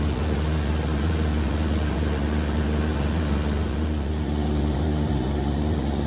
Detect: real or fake fake